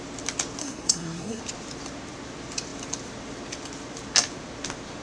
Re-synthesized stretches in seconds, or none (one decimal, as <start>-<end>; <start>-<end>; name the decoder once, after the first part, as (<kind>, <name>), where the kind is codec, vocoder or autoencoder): 0.6-1.4 (codec, SNAC)